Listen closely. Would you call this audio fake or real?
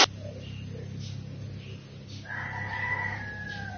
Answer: real